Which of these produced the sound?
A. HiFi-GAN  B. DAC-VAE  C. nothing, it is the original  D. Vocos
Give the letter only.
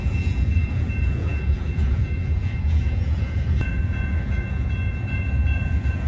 D